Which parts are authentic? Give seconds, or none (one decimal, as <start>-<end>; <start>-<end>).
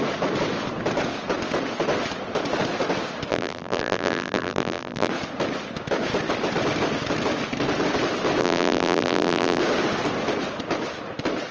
0.0-3.3; 5.1-8.4; 9.6-11.5